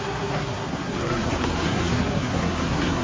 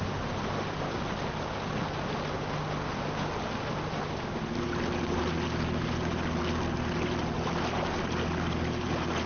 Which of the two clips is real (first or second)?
second